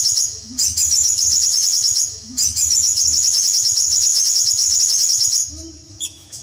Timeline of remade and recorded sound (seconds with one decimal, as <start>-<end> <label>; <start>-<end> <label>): 0.0-5.4 remade; 5.4-5.9 recorded; 5.9-6.4 remade

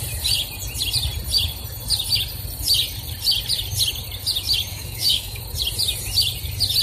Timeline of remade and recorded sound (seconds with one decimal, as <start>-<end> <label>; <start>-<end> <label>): 0.0-4.7 recorded; 4.7-5.4 remade; 5.4-6.8 recorded

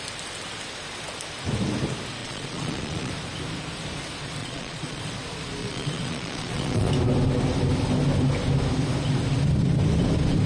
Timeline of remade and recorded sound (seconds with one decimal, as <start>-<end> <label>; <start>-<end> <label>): 0.0-2.2 recorded; 2.2-3.1 remade; 3.1-4.4 recorded; 4.4-5.0 remade; 5.0-5.6 recorded; 5.6-6.9 remade; 6.9-10.5 recorded

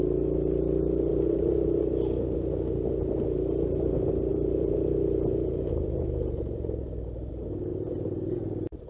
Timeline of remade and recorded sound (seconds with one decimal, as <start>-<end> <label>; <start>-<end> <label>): 0.0-1.1 recorded; 1.1-1.9 remade; 1.9-4.3 recorded; 4.3-7.3 remade; 7.3-7.7 recorded; 7.7-8.9 remade

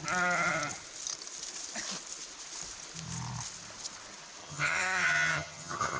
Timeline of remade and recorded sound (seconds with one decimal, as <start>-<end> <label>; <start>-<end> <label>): 0.0-4.4 recorded; 4.4-6.0 remade

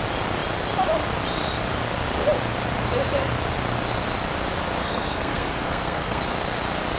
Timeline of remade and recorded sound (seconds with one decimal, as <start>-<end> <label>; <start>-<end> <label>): 0.0-4.8 recorded; 4.8-6.2 remade; 6.2-7.0 recorded